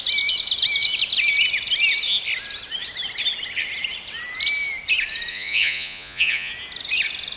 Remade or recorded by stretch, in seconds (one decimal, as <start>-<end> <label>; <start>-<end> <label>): 0.0-5.3 recorded; 5.3-6.5 remade; 6.5-7.4 recorded